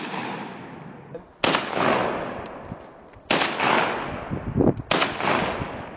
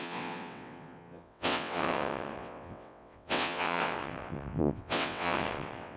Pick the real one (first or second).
first